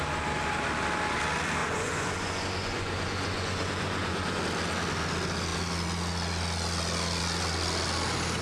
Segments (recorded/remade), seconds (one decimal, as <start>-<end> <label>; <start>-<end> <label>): 0.0-1.6 recorded; 1.6-4.4 remade; 4.4-8.4 recorded

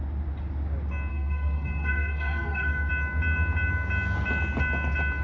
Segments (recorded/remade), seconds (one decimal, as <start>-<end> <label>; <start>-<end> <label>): 0.0-1.1 recorded; 1.1-2.9 remade; 2.9-5.2 recorded

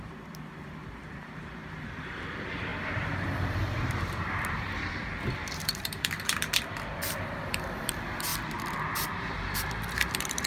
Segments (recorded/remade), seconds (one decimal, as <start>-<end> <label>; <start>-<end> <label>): 0.0-8.3 remade; 8.3-9.2 recorded; 9.2-10.5 remade

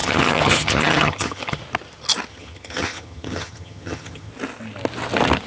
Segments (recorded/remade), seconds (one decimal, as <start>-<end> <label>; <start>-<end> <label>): 0.0-1.6 remade; 1.6-2.3 recorded; 2.3-4.3 remade; 4.3-5.5 recorded

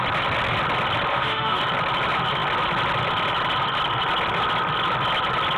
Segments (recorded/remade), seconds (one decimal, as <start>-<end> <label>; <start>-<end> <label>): 0.0-1.1 recorded; 1.1-1.6 remade; 1.6-5.6 recorded